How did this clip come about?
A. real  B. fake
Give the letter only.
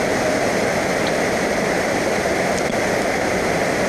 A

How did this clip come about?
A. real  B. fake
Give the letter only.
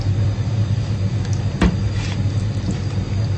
A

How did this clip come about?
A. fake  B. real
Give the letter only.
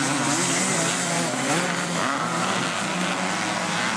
B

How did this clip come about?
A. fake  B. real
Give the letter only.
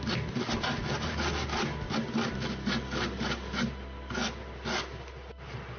B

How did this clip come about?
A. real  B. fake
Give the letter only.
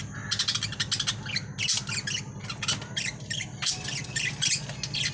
A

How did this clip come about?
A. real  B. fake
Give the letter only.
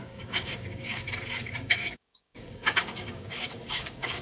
B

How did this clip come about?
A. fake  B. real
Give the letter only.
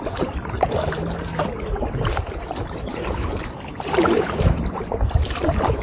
A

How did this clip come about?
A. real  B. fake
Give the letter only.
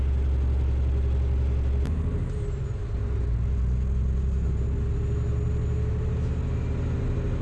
A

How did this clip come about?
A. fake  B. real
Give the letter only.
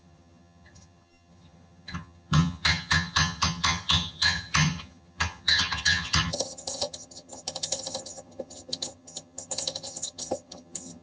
A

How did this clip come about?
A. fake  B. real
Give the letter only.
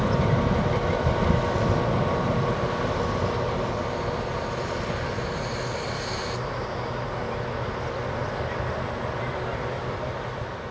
B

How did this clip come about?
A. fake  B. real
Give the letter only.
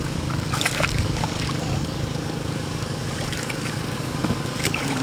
A